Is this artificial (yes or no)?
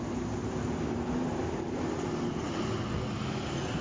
no